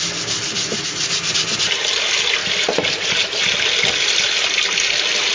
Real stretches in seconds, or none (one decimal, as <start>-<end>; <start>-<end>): 0.0-5.3